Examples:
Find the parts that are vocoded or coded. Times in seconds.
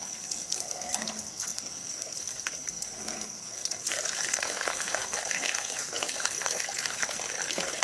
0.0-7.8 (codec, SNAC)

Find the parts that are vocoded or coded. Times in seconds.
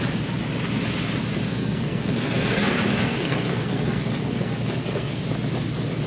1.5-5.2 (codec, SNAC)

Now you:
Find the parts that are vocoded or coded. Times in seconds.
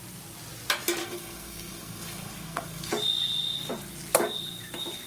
1.0-2.9 (codec, SNAC)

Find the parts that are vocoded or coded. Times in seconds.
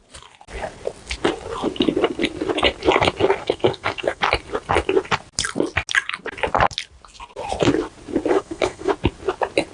3.4-4.2 (codec, SNAC); 8.3-8.9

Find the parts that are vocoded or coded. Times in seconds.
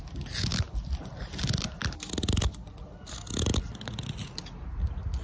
none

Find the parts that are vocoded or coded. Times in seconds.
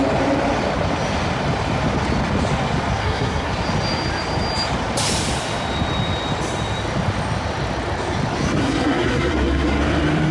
3.0-3.5 (codec, SNAC); 8.6-9.8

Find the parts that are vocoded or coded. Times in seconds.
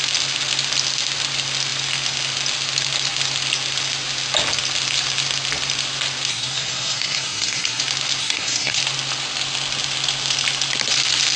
6.3-7.8 (codec, SNAC); 8.2-8.8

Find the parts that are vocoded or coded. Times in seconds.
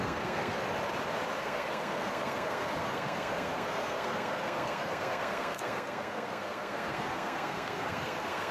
0.0-0.6 (codec, SNAC); 1.4-8.5